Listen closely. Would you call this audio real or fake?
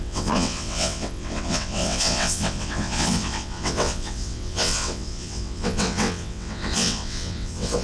fake